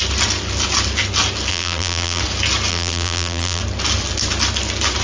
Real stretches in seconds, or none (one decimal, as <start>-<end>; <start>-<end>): 0.0-1.5; 2.2-2.7; 3.6-5.0